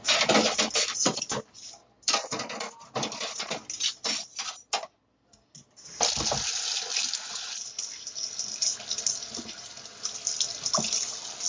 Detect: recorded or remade recorded